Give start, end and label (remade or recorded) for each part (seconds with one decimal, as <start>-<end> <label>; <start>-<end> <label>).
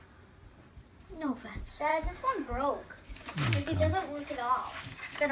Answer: 0.0-1.9 recorded; 1.9-5.3 remade